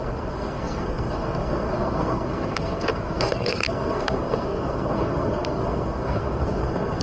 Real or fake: fake